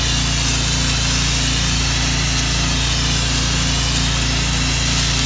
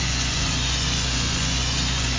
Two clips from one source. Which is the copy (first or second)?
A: second